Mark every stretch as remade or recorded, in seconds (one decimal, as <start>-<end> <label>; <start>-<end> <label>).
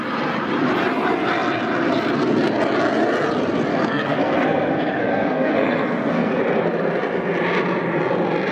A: 0.0-3.7 recorded; 3.7-6.4 remade; 6.4-8.5 recorded